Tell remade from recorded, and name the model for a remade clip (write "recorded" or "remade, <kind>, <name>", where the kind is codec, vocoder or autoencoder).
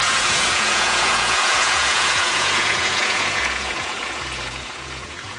remade, vocoder, Vocos